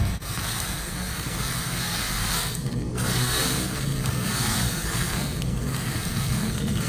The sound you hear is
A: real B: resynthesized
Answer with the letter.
B